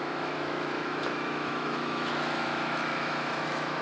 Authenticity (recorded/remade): remade